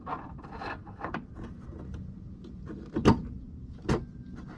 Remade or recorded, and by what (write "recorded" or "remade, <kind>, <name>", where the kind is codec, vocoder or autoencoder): recorded